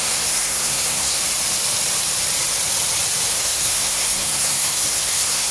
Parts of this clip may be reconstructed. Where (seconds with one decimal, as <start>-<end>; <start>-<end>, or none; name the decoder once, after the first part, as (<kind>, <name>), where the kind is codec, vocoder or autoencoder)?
0.0-1.2 (codec, SNAC); 3.3-5.5